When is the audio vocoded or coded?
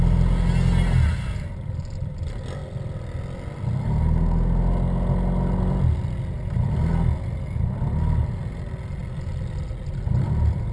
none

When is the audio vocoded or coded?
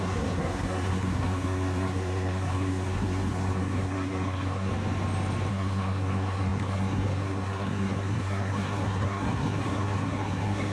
0.0-4.7; 5.5-10.7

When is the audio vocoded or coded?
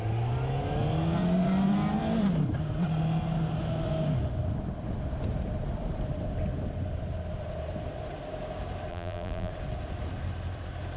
8.9-9.5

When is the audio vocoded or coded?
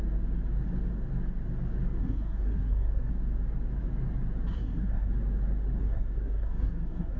2.0-3.1; 4.5-5.1; 5.8-7.2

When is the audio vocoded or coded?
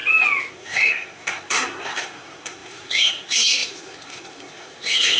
0.5-5.2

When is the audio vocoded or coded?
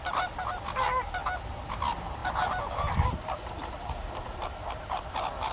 0.0-1.2; 1.7-5.5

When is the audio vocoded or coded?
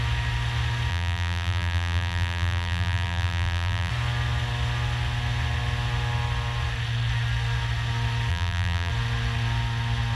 0.9-3.9; 8.3-8.9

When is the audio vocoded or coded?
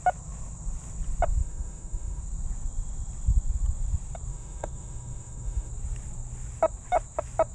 1.4-2.2; 4.3-5.7